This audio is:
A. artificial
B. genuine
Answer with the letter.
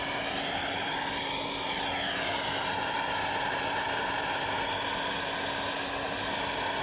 B